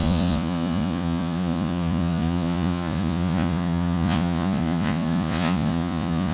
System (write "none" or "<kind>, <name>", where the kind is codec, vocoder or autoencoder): vocoder, Vocos